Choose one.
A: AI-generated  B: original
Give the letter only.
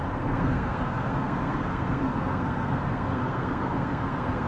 A